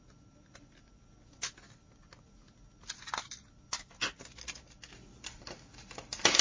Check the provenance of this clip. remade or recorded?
recorded